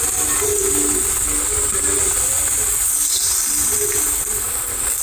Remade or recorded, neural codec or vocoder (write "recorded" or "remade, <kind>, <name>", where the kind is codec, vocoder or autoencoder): recorded